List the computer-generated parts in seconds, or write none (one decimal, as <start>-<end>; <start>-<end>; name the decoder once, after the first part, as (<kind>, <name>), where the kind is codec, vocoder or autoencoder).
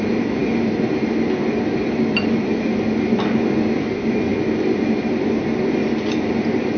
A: none